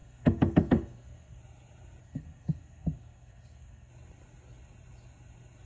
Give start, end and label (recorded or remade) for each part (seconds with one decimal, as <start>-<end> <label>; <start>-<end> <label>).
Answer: 0.0-1.4 remade; 1.4-2.0 recorded; 2.0-3.9 remade; 3.9-5.7 recorded